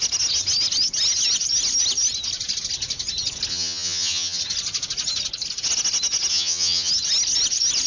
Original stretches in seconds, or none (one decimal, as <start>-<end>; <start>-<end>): 0.0-3.5; 4.4-6.3; 6.9-7.9